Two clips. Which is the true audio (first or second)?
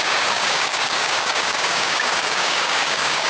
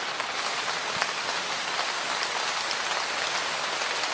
second